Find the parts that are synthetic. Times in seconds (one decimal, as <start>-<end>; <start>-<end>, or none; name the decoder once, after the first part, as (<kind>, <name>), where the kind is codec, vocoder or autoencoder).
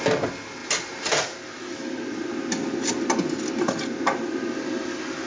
none